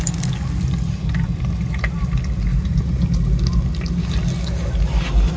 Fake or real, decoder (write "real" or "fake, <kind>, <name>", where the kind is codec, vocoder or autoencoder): real